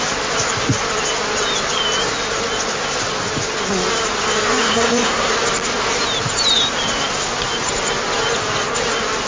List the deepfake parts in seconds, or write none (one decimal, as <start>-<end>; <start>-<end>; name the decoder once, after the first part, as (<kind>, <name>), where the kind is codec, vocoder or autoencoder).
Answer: 4.6-5.3 (codec, SNAC)